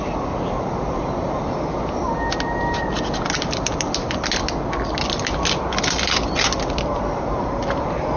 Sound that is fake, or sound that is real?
real